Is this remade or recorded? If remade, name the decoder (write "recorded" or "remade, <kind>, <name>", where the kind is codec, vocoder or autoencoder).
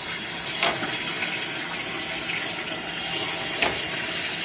recorded